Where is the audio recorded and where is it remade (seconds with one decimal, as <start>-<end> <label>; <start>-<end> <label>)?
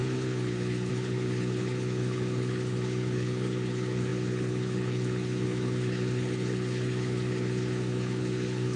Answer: 0.0-8.8 remade